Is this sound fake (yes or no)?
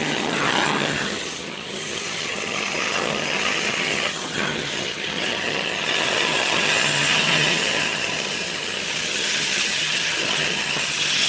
yes